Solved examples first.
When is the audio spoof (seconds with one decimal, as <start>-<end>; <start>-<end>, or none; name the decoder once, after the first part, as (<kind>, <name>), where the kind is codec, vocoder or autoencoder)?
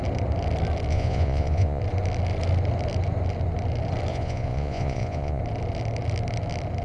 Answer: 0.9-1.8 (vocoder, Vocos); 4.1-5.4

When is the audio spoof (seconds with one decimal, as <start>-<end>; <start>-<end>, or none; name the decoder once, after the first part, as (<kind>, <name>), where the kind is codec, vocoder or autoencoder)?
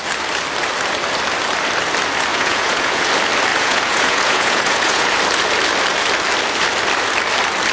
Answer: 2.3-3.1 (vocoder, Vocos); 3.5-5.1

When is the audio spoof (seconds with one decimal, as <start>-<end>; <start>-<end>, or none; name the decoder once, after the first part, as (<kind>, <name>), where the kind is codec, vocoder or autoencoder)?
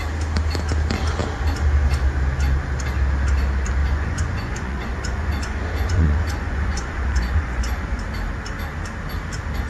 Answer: 3.8-8.0 (vocoder, Vocos)